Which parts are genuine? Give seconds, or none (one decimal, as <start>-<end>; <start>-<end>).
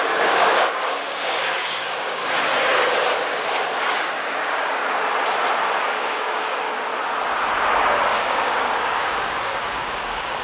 2.2-3.9; 4.8-5.8; 6.9-7.9